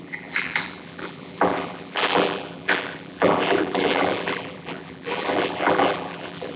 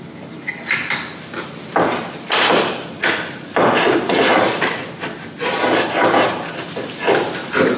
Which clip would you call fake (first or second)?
first